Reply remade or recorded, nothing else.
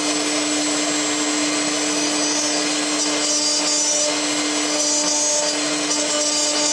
recorded